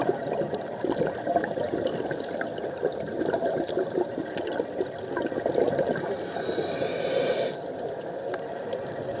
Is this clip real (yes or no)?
yes